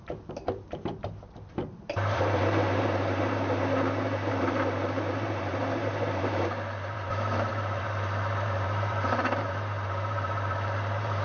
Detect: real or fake fake